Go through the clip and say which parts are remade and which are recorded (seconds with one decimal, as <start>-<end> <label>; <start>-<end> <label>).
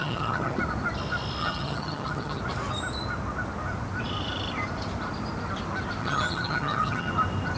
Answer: 0.0-0.6 remade; 0.6-1.4 recorded; 1.4-2.4 remade; 2.4-6.0 recorded; 6.0-7.1 remade; 7.1-7.6 recorded